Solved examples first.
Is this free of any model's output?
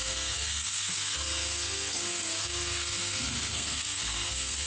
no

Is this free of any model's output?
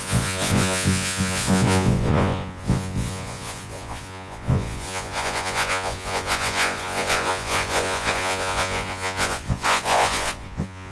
no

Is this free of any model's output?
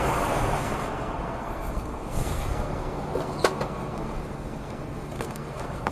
no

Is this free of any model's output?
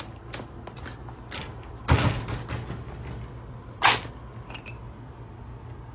yes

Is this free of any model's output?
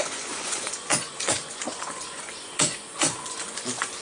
no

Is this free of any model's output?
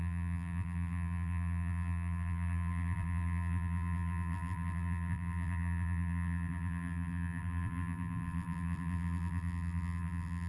no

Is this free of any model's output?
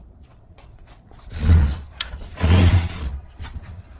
no